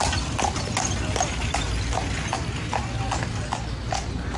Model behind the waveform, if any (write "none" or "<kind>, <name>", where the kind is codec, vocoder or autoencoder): none